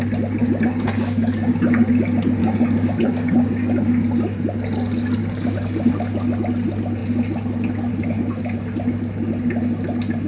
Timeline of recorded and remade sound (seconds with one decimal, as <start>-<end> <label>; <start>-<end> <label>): 0.0-0.4 recorded; 0.4-1.9 remade; 1.9-2.4 recorded; 2.4-3.8 remade; 3.8-5.2 recorded; 5.2-5.9 remade; 5.9-10.3 recorded